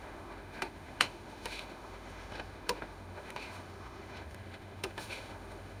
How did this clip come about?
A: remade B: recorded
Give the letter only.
A